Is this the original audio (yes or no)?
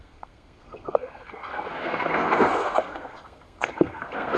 no